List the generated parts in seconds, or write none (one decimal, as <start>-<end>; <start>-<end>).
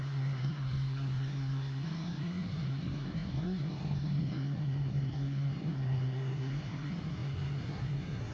0.0-8.3